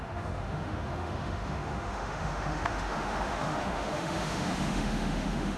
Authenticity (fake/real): fake